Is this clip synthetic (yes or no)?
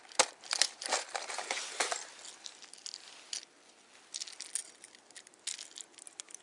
no